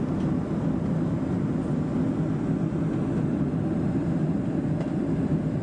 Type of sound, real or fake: real